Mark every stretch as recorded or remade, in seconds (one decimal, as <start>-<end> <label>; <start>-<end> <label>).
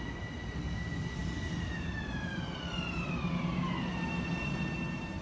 0.0-5.2 recorded